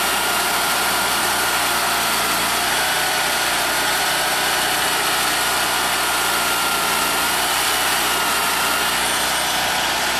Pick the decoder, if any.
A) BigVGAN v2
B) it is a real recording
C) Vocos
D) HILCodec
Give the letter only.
A